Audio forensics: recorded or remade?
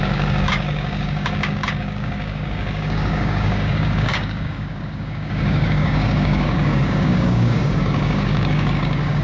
remade